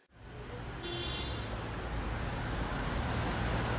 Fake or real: real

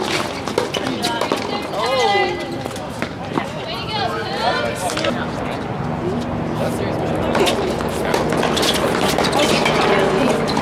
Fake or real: real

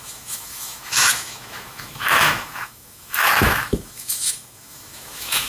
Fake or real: fake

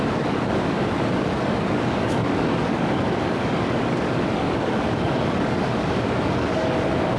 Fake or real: fake